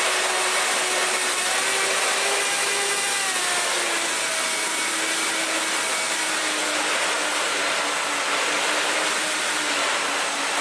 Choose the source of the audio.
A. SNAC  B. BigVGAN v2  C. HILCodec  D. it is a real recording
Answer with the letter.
D